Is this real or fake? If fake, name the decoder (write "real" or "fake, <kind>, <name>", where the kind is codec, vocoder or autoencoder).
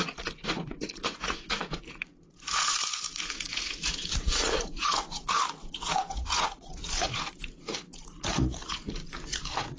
fake, vocoder, Vocos